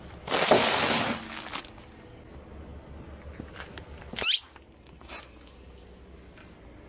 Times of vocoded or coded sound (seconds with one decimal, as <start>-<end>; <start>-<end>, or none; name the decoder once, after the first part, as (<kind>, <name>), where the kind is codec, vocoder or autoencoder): none